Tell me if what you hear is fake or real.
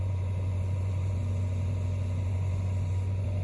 fake